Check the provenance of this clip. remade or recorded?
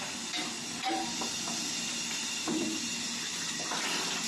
recorded